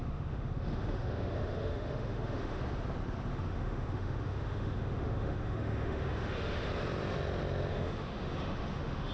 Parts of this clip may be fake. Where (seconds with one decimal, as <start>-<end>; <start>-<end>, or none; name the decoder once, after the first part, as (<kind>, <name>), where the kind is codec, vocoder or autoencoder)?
0.0-2.6 (autoencoder, DAC-VAE); 3.3-6.7; 7.7-9.1